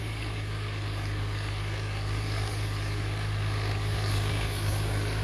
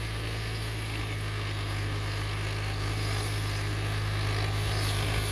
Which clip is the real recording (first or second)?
second